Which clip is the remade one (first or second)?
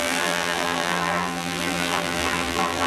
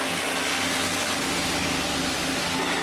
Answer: first